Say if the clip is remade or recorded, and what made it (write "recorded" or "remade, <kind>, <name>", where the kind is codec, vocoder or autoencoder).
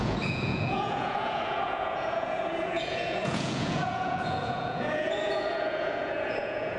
remade, vocoder, Vocos